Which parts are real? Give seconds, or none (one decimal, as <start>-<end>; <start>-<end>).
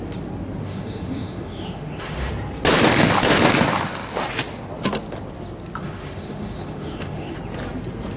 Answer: 0.0-0.6; 2.3-5.8; 7.4-8.2